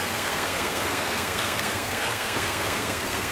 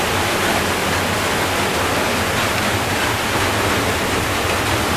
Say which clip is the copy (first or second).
first